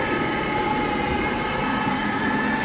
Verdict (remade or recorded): recorded